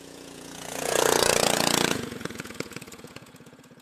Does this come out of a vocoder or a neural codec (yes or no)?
yes